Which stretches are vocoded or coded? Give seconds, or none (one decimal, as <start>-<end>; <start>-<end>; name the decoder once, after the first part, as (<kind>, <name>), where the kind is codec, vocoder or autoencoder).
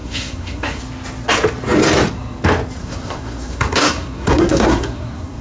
0.0-0.8 (codec, SNAC); 2.8-5.4